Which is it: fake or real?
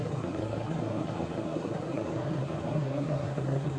fake